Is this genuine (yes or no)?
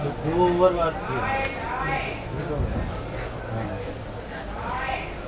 yes